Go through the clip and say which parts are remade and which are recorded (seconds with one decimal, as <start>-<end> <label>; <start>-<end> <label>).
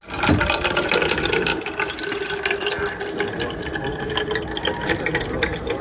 0.0-5.8 recorded